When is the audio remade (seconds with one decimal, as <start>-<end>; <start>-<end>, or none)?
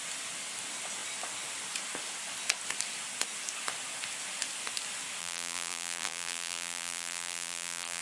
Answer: 5.2-8.0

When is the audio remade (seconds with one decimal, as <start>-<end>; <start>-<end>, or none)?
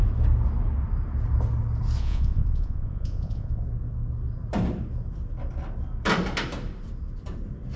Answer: 2.0-3.6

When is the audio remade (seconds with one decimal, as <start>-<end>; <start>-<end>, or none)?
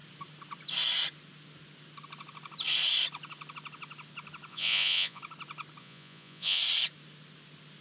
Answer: 4.5-5.2; 5.8-6.6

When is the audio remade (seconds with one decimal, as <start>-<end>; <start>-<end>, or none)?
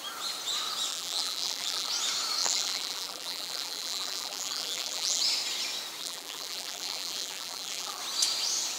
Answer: 0.9-1.9; 2.4-5.2; 6.0-8.0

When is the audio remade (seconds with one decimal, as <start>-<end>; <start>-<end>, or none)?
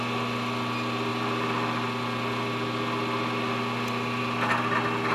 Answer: none